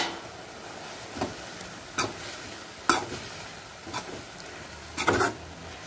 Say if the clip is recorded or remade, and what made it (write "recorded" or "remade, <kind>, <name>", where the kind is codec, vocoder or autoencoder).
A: recorded